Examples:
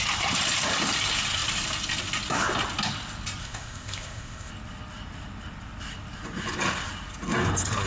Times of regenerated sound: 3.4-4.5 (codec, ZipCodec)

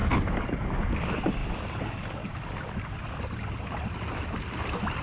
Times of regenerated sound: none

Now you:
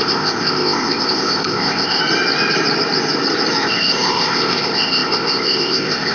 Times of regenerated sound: 0.0-2.0 (codec, ZipCodec); 3.6-6.1

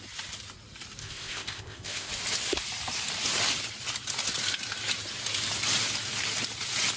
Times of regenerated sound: 1.0-2.1 (codec, ZipCodec)

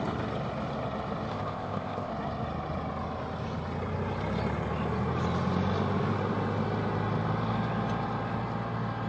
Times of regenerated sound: 1.3-2.1 (codec, ZipCodec)

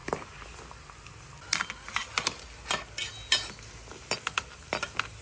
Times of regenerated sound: none

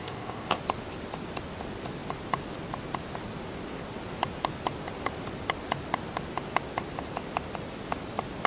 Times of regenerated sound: 0.0-0.6 (codec, ZipCodec)